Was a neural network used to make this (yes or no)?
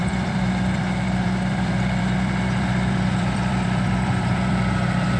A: yes